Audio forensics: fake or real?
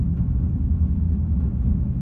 real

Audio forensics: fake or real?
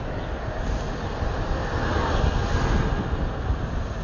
real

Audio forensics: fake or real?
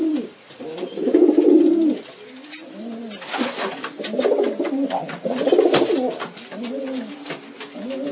real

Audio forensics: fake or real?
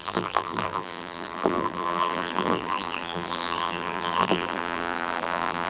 fake